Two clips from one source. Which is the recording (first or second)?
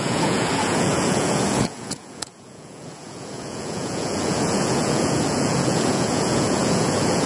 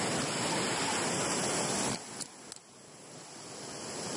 second